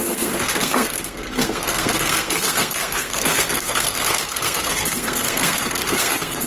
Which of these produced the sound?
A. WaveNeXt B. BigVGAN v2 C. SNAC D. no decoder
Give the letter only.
C